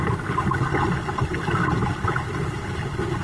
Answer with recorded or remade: remade